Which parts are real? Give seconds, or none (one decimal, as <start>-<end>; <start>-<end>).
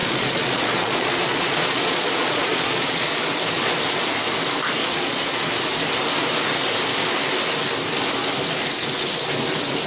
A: 3.1-4.8; 5.5-9.9